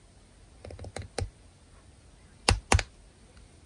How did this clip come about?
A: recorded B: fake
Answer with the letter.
A